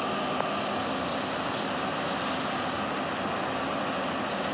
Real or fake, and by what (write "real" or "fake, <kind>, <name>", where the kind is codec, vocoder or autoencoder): real